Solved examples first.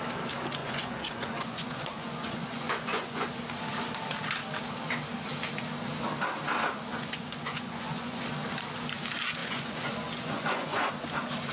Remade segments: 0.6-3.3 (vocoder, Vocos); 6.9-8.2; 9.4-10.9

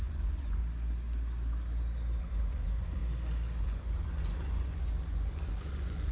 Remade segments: 0.0-0.6 (vocoder, Vocos); 2.2-3.0; 3.6-6.1